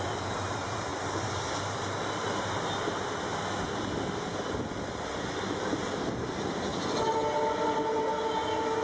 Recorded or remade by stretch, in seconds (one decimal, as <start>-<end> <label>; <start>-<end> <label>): 0.0-8.8 recorded